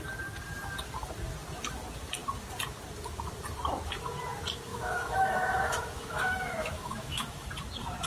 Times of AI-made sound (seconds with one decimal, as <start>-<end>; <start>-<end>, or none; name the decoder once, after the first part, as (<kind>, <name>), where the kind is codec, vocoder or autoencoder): 4.7-7.5 (autoencoder, DAC-VAE)